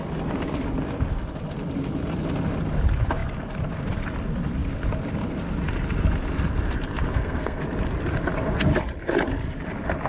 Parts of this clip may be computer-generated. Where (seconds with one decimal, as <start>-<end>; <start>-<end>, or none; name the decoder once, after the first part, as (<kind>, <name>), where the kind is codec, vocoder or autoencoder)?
7.1-7.6 (codec, SNAC)

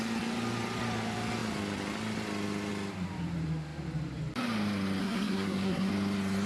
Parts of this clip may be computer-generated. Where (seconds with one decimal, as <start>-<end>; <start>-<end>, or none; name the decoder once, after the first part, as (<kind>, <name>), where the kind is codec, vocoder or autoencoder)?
5.0-5.9 (codec, SNAC)

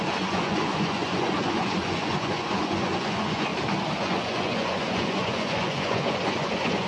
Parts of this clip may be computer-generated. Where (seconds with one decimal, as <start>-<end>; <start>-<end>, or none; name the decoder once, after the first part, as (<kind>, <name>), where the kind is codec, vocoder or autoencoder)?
0.0-3.5 (vocoder, Vocos); 4.0-6.9

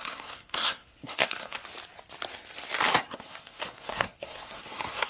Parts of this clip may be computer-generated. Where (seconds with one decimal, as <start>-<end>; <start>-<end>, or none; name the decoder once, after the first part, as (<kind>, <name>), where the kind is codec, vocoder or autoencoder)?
0.0-1.6 (codec, SNAC); 2.9-5.1

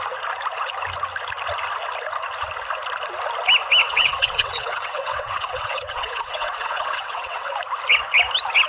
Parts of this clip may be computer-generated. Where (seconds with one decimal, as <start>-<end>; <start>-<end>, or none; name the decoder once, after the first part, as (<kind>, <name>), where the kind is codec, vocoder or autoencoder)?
3.8-7.5 (vocoder, WaveNeXt)